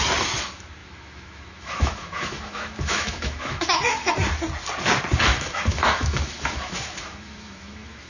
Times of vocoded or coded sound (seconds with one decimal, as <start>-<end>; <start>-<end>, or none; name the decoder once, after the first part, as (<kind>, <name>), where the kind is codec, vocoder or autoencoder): 0.8-4.1 (autoencoder, DAC-VAE); 5.3-8.1